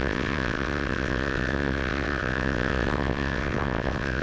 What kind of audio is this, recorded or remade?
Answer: remade